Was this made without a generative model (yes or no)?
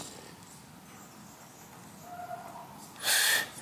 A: yes